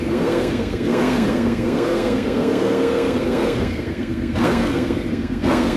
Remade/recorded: remade